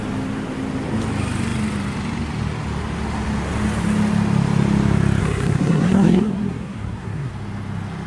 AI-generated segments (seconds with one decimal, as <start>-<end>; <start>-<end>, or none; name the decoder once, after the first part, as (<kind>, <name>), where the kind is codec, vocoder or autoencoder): 5.2-7.3 (codec, SNAC)